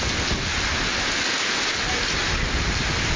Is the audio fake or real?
real